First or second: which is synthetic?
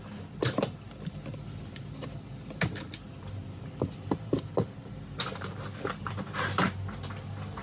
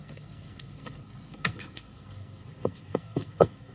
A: second